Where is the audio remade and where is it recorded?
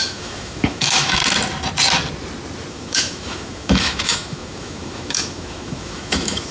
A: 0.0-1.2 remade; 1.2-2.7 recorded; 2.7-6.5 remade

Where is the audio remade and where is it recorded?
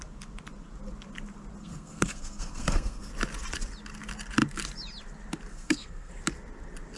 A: 0.0-1.6 recorded; 1.6-3.1 remade; 3.1-5.5 recorded; 5.5-6.1 remade; 6.1-7.0 recorded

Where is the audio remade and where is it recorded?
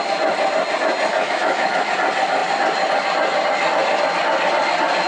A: 0.0-1.1 recorded; 1.1-1.9 remade; 1.9-5.1 recorded